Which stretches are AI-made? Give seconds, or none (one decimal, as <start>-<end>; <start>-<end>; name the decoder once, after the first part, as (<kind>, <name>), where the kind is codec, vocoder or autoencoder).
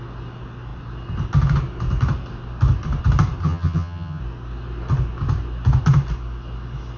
3.4-4.2 (vocoder, HiFi-GAN)